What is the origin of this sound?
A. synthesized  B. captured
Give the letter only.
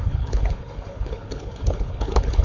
A